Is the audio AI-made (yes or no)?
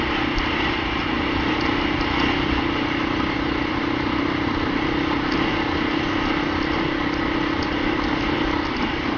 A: no